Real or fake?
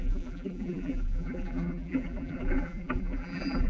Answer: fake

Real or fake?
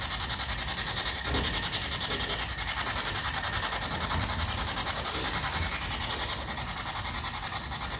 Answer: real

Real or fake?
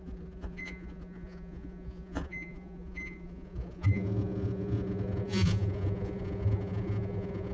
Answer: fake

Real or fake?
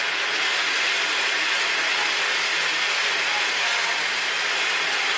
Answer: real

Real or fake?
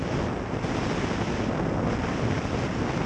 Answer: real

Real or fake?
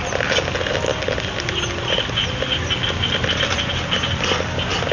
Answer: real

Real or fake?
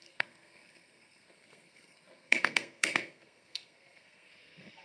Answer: fake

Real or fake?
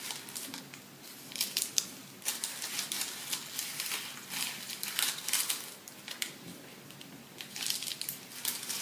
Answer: real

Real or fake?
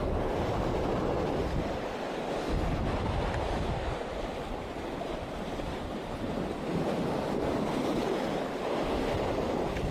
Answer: real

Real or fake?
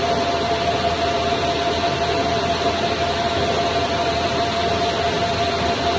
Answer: real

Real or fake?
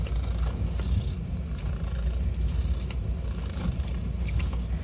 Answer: real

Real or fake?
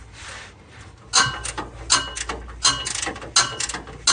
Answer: real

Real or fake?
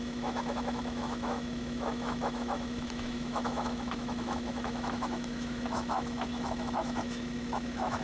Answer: fake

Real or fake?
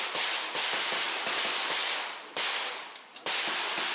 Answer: real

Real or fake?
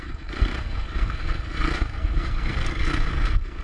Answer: fake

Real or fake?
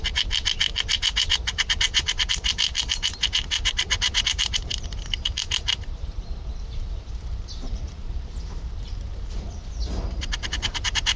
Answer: fake